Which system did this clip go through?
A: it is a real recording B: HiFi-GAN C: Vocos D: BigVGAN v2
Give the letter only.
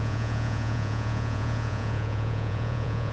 C